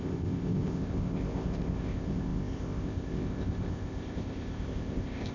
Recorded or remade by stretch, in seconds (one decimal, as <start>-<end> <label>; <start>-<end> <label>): 0.0-5.3 remade